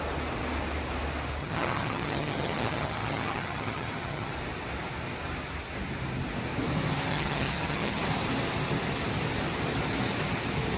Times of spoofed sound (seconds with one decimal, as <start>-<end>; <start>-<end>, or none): 1.4-4.3; 7.1-8.0

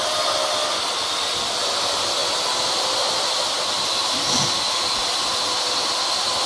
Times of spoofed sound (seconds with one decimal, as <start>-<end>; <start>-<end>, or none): none